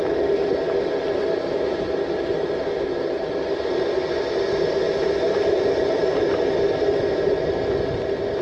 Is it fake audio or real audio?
real